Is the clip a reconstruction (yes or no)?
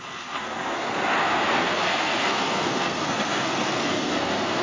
yes